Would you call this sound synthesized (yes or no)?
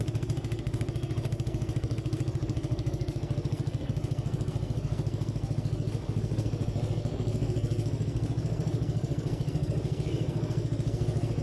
yes